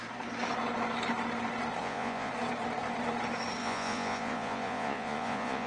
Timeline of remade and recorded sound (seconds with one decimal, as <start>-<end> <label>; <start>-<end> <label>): 0.0-1.8 recorded; 1.8-2.3 remade; 2.3-3.6 recorded; 3.6-5.7 remade